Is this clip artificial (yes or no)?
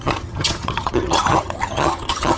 yes